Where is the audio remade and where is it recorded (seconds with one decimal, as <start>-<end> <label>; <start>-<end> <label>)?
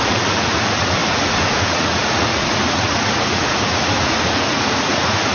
0.0-5.3 remade